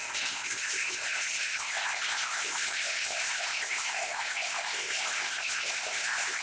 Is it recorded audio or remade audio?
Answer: remade